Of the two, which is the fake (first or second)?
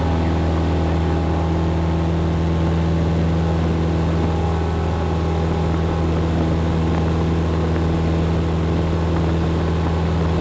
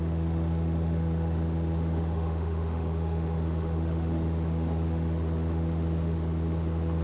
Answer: second